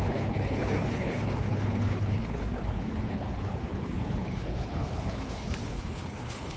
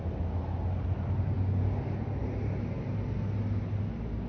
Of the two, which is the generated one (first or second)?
first